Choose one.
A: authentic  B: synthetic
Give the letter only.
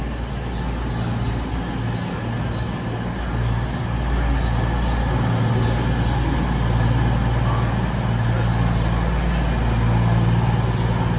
A